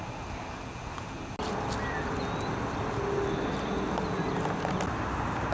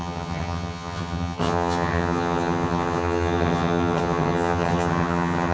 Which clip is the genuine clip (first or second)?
first